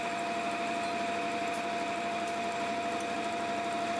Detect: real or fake real